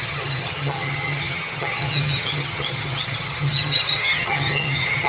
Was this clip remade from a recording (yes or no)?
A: yes